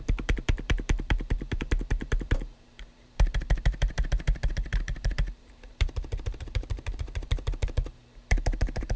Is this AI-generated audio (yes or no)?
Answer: yes